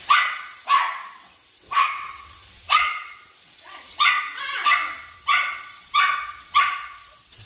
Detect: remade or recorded remade